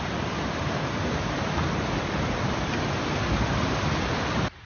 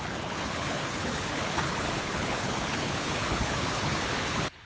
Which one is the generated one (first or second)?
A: second